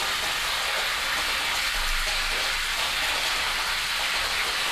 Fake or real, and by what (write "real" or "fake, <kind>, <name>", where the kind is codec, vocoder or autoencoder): real